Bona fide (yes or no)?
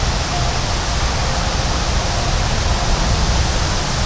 yes